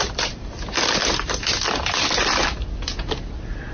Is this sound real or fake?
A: real